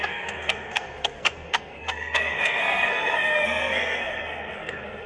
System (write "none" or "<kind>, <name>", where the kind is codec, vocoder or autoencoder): codec, SNAC